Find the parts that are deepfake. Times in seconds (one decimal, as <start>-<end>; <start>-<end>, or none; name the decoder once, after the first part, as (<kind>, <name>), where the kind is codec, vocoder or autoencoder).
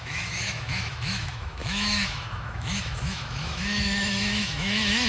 0.0-5.1 (autoencoder, DAC-VAE)